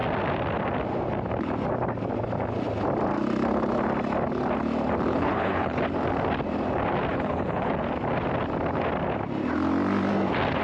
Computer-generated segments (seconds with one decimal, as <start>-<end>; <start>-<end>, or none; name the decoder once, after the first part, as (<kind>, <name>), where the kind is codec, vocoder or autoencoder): 5.1-5.8 (codec, HILCodec); 7.1-7.7